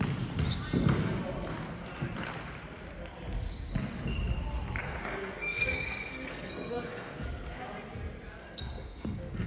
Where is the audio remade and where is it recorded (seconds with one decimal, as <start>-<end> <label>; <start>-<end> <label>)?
0.0-4.8 recorded; 4.8-7.6 remade; 7.6-8.4 recorded; 8.4-9.5 remade